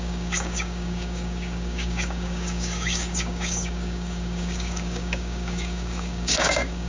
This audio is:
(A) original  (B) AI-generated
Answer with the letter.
B